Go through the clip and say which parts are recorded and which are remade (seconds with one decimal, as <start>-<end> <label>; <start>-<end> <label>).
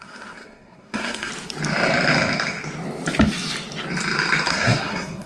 0.0-1.3 remade; 1.3-4.5 recorded; 4.5-5.3 remade